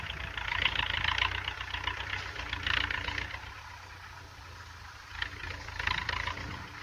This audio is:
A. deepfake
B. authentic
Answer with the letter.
B